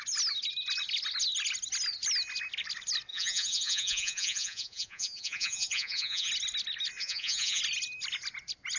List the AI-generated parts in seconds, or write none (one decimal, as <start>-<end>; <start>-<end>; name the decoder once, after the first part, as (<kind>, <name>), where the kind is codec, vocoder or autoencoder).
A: 3.1-6.3 (vocoder, Vocos); 7.0-7.6